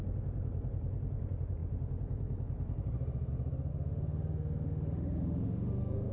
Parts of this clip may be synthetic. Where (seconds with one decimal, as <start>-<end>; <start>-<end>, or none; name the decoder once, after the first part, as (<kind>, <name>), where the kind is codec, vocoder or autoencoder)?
3.7-6.1 (autoencoder, DAC-VAE)